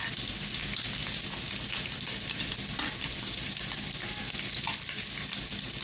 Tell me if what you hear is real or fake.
real